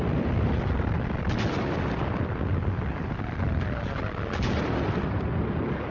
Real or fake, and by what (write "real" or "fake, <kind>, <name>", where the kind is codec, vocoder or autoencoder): real